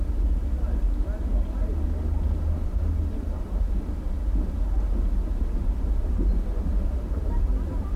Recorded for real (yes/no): yes